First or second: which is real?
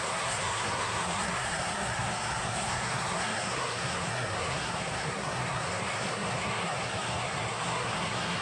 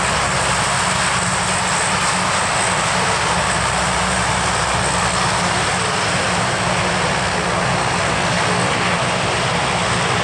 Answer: second